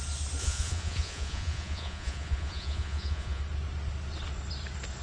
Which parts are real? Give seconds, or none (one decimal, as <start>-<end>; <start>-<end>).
0.0-0.4; 3.4-5.0